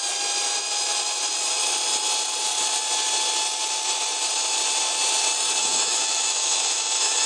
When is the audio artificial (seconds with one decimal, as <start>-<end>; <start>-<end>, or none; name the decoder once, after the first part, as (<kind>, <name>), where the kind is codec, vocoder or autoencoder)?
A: 5.6-7.3 (autoencoder, DAC-VAE)